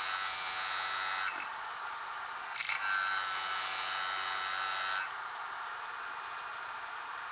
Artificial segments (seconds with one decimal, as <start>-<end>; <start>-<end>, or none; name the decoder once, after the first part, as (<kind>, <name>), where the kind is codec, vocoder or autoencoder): none

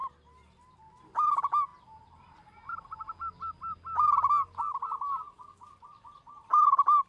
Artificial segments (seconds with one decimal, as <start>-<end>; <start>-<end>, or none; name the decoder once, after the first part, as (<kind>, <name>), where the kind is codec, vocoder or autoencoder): 1.0-7.1 (vocoder, BigVGAN v2)

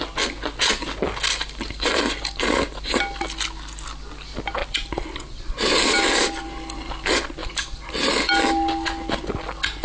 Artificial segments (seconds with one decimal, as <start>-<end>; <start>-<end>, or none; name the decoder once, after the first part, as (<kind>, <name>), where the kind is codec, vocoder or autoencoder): 4.6-6.4 (vocoder, BigVGAN v2); 7.4-8.1

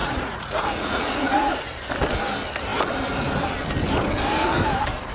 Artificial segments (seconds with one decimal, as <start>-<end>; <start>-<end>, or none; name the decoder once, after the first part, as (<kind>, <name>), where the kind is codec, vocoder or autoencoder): 0.0-1.9 (vocoder, Vocos)

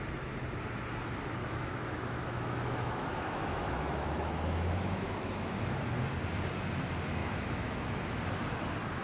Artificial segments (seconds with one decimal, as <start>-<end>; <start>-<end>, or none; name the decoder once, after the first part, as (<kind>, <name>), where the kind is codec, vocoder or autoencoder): 1.4-5.9 (autoencoder, DAC-VAE); 7.2-8.2

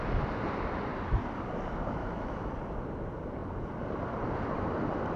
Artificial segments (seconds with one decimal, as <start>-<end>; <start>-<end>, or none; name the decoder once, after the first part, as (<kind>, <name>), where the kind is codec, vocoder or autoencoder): 2.0-2.5 (autoencoder, DAC-VAE)

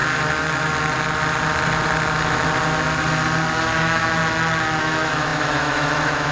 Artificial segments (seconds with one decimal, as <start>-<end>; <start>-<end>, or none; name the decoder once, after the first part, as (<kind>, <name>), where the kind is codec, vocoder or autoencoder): 3.8-4.2 (autoencoder, DAC-VAE); 4.8-6.3

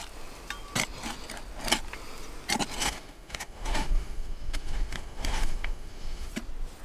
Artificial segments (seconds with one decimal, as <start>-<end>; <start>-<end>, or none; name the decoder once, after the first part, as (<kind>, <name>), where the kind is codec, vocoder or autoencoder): 2.8-6.3 (autoencoder, DAC-VAE)